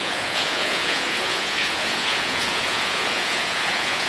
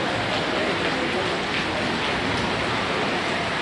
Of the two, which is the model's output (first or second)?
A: first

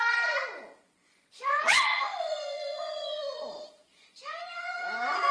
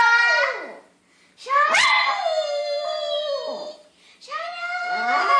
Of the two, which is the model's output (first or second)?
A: first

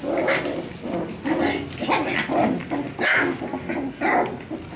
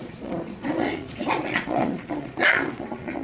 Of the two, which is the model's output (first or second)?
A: second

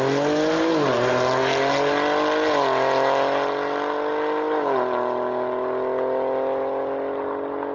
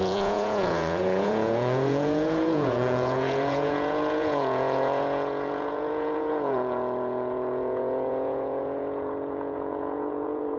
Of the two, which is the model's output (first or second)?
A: second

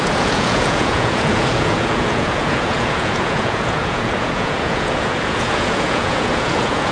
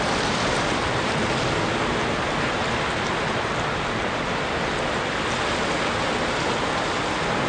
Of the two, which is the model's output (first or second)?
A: first